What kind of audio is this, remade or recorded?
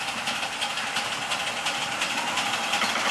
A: recorded